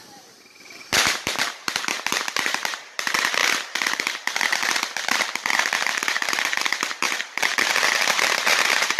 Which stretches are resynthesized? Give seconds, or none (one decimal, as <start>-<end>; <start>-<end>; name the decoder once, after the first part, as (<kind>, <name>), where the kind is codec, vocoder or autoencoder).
0.0-3.4 (vocoder, BigVGAN v2); 3.9-9.0